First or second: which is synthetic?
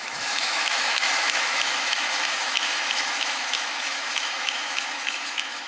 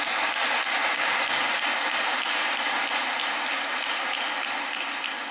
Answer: first